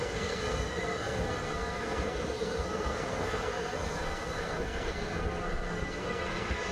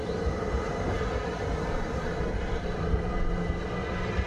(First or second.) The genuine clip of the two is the second